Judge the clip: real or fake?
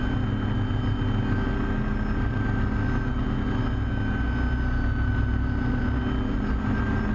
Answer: real